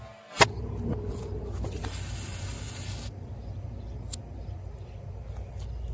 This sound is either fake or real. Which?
real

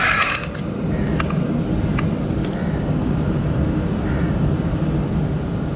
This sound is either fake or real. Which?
real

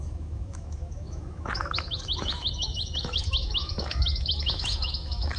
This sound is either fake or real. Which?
fake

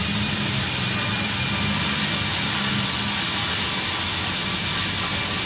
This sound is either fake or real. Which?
real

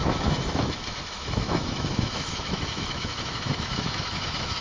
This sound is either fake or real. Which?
fake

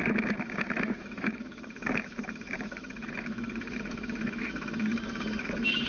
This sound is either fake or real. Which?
fake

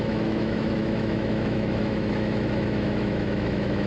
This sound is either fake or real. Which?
fake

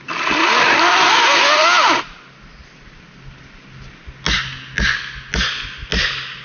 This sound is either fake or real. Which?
real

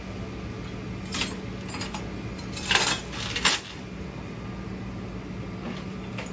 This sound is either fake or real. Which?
real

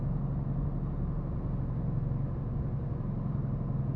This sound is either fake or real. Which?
real